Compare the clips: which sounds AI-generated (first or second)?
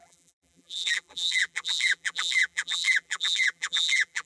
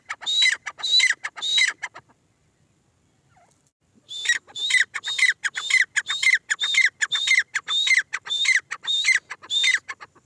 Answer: first